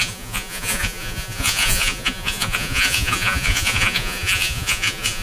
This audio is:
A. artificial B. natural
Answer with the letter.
A